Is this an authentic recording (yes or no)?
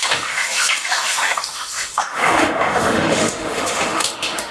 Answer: no